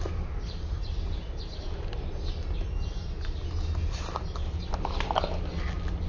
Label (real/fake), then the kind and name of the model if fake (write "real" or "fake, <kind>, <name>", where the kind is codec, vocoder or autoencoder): real